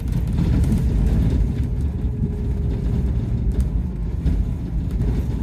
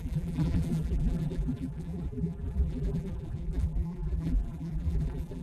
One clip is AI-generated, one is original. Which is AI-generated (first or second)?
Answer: second